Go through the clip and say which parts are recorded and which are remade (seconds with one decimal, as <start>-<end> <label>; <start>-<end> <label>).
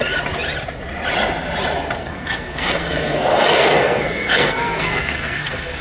0.0-2.0 recorded; 2.0-5.8 remade